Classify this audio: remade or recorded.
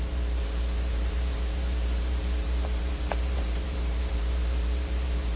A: remade